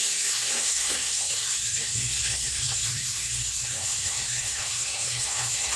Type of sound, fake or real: fake